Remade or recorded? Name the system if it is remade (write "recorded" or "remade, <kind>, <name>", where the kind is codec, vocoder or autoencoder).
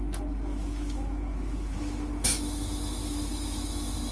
remade, autoencoder, DAC-VAE